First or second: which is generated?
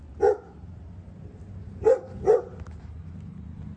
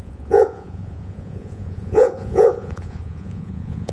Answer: second